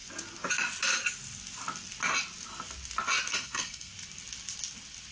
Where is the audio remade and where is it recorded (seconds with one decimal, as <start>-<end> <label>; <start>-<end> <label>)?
0.0-3.3 recorded; 3.3-3.9 remade; 3.9-5.1 recorded